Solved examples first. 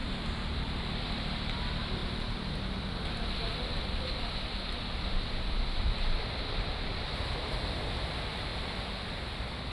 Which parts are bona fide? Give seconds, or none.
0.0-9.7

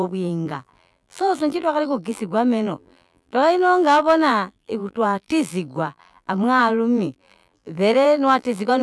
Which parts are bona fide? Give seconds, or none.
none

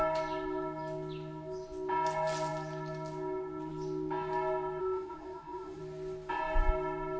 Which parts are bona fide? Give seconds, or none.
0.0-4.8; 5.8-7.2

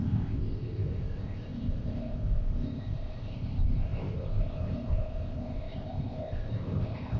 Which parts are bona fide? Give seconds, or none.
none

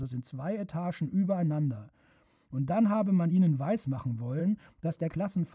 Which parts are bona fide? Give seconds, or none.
0.0-4.4; 5.1-5.5

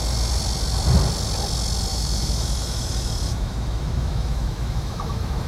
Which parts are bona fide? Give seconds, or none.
0.0-1.9

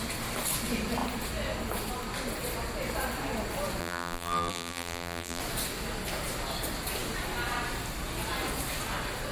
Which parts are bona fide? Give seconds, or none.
0.0-3.8; 5.4-9.3